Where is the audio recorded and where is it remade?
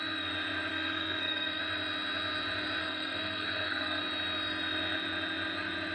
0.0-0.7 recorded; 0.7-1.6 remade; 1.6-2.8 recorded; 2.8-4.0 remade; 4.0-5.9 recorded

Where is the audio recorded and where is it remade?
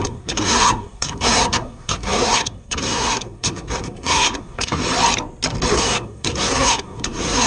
0.0-4.8 remade; 4.8-5.7 recorded; 5.7-7.5 remade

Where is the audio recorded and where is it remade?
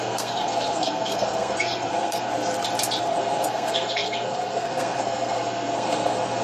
0.0-2.3 remade; 2.3-3.0 recorded; 3.0-6.4 remade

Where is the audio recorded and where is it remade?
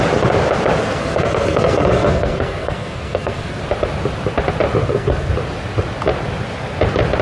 0.0-0.8 recorded; 0.8-3.6 remade; 3.6-4.8 recorded; 4.8-5.3 remade; 5.3-7.2 recorded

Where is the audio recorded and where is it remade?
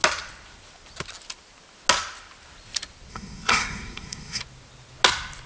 0.0-3.1 recorded; 3.1-4.4 remade; 4.4-5.5 recorded